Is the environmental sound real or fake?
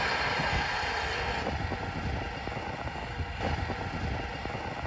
real